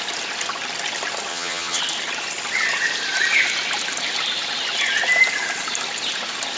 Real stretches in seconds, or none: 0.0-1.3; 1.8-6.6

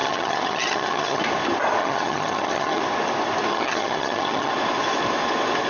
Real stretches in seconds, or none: 1.2-1.8; 2.8-3.5; 4.5-5.7

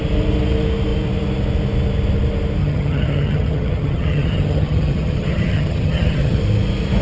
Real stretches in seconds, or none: 0.0-2.6; 6.4-7.0

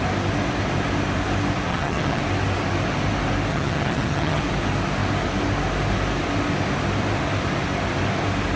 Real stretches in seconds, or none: 0.0-1.7; 2.2-3.5; 4.4-8.6

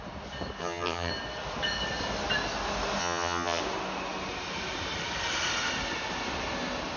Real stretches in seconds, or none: 0.0-0.6; 1.1-3.0; 3.6-7.0